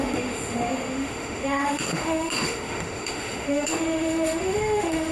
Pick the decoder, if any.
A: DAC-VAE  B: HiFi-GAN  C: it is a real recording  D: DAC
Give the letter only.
A